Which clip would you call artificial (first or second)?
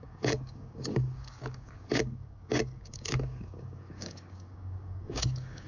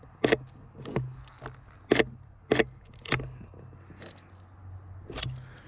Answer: first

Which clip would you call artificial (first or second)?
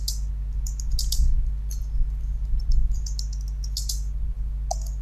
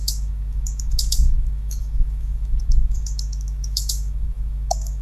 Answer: second